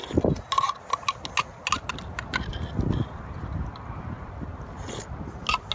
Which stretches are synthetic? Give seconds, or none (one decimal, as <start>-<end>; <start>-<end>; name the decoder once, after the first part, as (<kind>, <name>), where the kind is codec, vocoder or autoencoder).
2.5-4.9 (vocoder, BigVGAN v2)